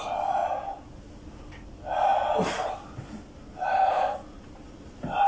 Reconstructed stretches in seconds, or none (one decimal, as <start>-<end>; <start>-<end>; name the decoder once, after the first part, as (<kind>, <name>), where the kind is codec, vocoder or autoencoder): none